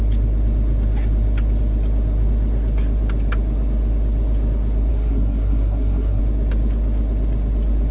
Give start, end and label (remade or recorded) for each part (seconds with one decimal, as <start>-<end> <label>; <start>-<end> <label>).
0.0-4.9 recorded; 4.9-6.2 remade; 6.2-7.9 recorded